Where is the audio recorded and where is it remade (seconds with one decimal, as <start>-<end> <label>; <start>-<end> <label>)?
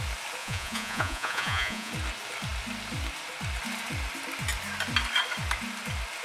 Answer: 0.0-0.4 recorded; 0.4-1.9 remade; 1.9-6.2 recorded